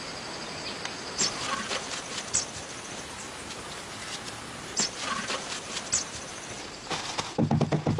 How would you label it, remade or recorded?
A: recorded